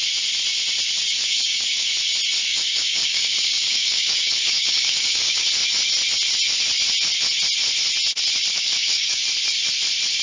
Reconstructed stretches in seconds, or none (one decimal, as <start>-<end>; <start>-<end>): 1.2-1.9; 2.5-5.5; 8.5-9.2